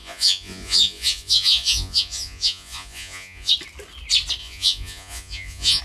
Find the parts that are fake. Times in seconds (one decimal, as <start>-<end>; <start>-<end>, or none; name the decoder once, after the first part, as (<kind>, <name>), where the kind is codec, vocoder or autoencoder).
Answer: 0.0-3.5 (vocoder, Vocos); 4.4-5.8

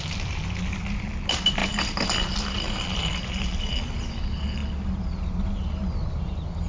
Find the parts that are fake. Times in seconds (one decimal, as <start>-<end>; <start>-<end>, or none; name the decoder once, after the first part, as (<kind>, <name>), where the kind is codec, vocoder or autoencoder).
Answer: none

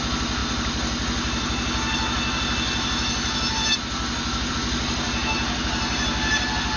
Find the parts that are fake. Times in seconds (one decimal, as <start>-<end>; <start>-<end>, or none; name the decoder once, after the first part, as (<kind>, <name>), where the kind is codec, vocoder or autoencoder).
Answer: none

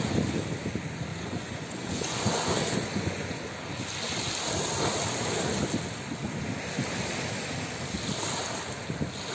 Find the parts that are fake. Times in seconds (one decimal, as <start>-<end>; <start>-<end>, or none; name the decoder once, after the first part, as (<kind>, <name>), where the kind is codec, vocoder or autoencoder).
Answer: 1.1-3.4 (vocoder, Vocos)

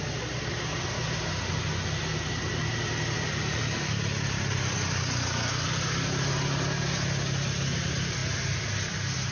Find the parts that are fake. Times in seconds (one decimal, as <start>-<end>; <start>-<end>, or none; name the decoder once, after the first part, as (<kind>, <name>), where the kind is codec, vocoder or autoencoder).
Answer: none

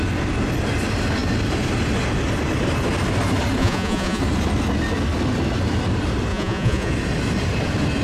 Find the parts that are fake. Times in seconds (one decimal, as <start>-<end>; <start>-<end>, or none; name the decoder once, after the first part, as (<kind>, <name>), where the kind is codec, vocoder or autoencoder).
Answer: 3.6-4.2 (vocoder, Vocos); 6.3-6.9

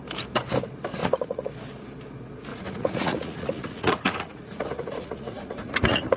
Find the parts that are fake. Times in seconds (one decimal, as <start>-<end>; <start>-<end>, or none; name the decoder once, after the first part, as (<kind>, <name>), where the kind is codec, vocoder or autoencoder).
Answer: 1.0-1.5 (vocoder, Vocos); 2.5-6.2